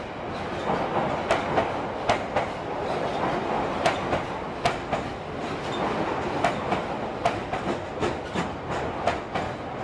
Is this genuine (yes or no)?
yes